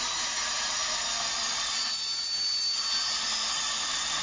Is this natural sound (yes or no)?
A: yes